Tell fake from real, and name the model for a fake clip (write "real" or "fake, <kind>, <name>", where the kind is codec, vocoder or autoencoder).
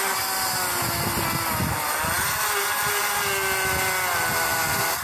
real